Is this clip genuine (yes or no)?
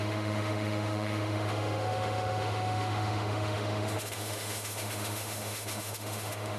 no